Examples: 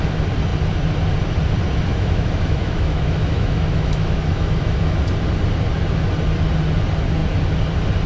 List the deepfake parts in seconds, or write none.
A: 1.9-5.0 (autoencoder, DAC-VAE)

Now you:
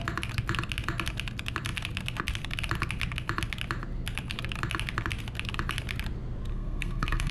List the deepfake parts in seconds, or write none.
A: 6.5-7.3 (codec, SNAC)

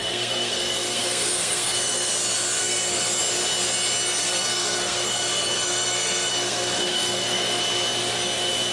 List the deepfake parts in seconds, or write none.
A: 0.0-2.1 (codec, SNAC); 2.6-3.2; 4.2-7.6

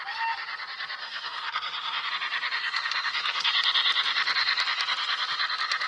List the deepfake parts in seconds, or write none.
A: 1.0-2.1 (codec, SNAC); 2.6-3.5

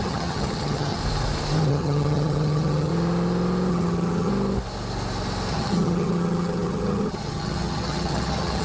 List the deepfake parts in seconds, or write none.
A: 0.0-1.0 (vocoder, HiFi-GAN); 1.7-2.9; 3.7-4.3; 5.5-8.6

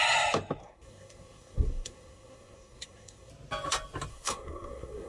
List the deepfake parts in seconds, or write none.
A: 0.6-3.3 (codec, SNAC); 4.1-5.1

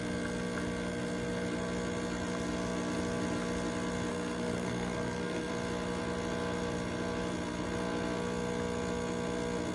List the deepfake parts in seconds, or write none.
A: 4.1-5.5 (codec, SNAC)